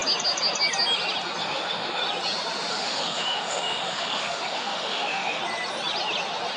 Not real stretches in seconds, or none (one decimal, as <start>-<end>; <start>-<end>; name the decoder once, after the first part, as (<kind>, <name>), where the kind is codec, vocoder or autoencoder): 1.4-2.0 (autoencoder, DAC-VAE); 2.7-5.4